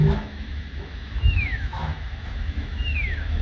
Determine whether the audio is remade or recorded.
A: remade